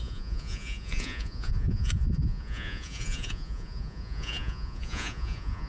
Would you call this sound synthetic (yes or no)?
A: yes